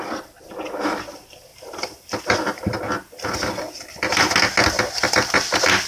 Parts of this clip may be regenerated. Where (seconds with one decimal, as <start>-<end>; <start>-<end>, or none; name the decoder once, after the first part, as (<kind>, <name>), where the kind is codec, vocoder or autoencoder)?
1.5-2.8 (vocoder, BigVGAN v2)

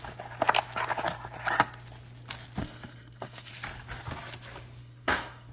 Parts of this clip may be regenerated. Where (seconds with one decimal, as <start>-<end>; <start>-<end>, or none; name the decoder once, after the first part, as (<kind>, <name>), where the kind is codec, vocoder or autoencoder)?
2.6-3.5 (codec, SNAC); 4.8-5.5

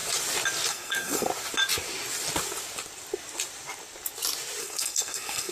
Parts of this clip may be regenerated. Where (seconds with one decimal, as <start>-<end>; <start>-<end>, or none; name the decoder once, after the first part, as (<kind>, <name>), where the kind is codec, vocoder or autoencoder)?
0.7-1.3 (codec, SNAC); 4.6-5.5